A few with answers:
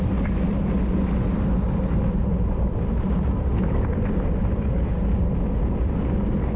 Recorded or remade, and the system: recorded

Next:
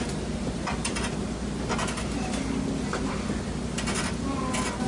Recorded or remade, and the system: recorded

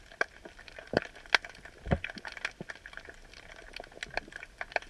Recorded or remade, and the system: recorded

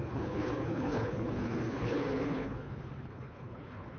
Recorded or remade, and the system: remade, codec, HILCodec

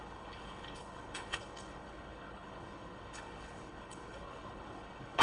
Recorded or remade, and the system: remade, codec, HILCodec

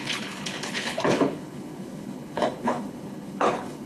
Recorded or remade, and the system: remade, codec, HILCodec